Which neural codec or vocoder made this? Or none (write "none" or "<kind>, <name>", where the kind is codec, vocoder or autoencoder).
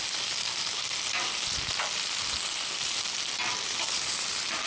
none